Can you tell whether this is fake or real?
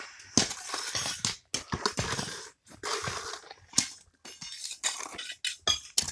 real